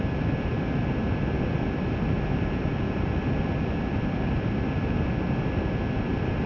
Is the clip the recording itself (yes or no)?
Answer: yes